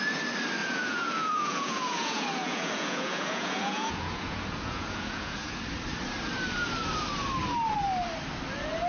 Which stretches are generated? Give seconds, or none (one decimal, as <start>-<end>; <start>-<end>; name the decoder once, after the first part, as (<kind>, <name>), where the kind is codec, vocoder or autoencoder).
0.6-5.6 (vocoder, Vocos)